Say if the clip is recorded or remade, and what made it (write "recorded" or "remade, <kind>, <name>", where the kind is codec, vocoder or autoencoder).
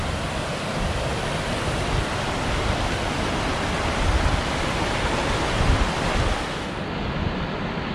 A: recorded